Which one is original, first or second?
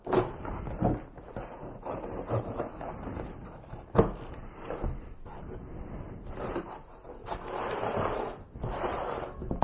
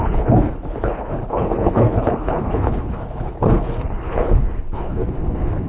first